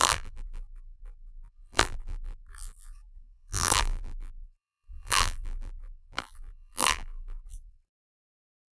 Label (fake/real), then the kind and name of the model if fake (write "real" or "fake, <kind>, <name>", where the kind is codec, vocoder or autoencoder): fake, vocoder, BigVGAN v2